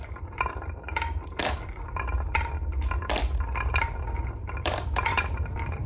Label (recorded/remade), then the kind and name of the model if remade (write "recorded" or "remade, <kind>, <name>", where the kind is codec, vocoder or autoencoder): remade, vocoder, BigVGAN v2